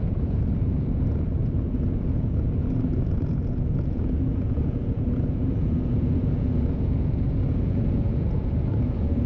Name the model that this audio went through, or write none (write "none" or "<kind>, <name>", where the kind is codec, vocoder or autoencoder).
vocoder, Vocos